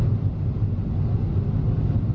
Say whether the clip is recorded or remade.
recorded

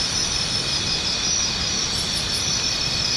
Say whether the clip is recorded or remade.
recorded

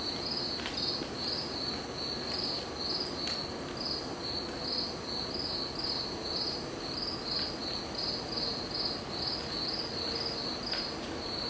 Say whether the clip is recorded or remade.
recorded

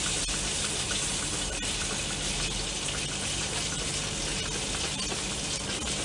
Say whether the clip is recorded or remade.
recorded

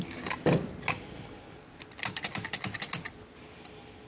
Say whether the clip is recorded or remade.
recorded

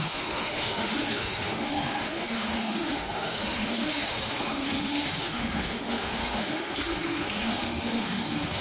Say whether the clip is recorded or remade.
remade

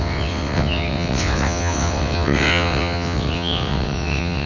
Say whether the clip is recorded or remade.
remade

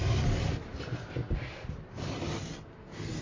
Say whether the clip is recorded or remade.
recorded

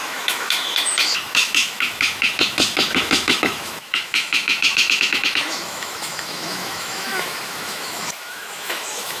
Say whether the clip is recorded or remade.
remade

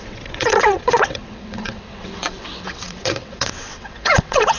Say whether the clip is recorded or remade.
remade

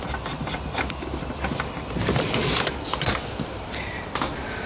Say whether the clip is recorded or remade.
recorded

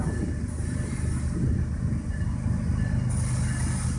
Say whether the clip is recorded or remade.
recorded